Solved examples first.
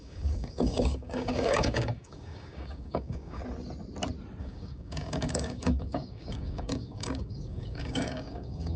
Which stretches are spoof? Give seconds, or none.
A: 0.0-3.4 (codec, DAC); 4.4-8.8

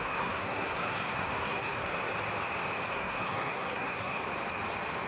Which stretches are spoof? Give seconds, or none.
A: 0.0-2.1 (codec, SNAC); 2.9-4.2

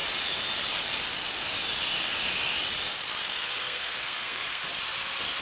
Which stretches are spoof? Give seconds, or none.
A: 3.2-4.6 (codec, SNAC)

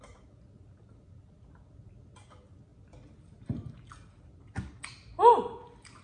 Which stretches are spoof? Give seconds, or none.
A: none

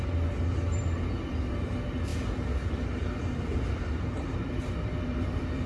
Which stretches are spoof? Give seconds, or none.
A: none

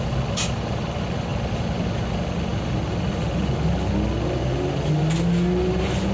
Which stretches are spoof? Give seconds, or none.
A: none